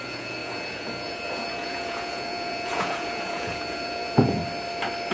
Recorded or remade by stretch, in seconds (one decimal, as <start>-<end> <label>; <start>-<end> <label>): 0.0-4.4 remade; 4.4-5.1 recorded